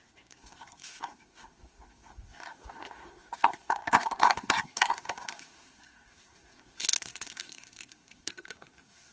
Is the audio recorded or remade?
remade